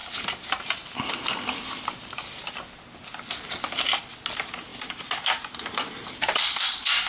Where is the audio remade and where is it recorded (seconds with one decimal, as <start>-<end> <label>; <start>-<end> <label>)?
0.0-7.1 recorded